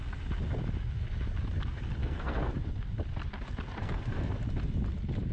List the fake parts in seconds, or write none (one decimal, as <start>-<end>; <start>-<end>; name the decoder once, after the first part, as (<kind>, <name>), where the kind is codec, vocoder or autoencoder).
2.0-2.5 (codec, SNAC); 3.8-4.3